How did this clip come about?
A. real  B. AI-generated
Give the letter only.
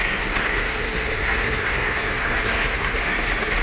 B